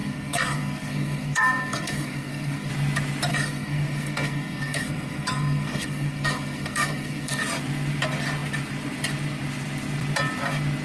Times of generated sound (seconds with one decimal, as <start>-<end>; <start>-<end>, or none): 0.0-2.7; 3.3-7.4